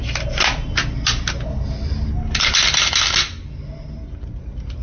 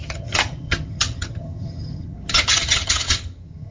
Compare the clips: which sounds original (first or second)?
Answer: first